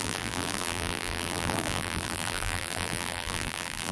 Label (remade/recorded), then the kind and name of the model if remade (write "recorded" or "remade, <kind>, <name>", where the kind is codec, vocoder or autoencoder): remade, vocoder, BigVGAN v2